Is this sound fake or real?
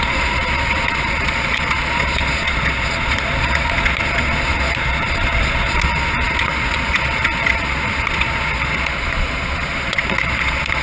fake